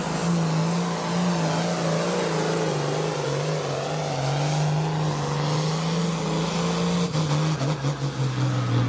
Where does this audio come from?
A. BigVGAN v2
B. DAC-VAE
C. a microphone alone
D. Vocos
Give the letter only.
C